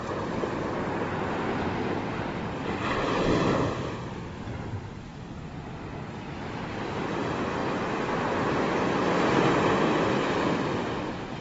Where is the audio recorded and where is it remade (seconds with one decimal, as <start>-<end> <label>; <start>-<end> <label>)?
0.0-1.1 remade; 1.1-2.1 recorded; 2.1-5.1 remade; 5.1-7.1 recorded; 7.1-7.6 remade; 7.6-11.4 recorded